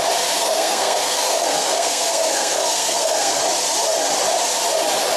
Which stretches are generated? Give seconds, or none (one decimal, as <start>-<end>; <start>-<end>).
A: 0.4-3.4